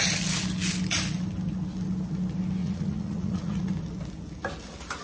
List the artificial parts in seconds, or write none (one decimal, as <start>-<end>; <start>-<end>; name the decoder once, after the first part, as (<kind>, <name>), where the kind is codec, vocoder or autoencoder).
2.6-3.7 (vocoder, Vocos)